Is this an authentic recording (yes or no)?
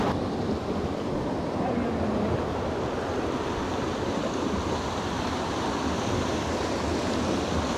yes